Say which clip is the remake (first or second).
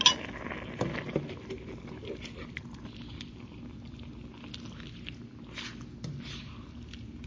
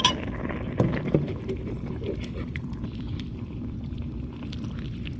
second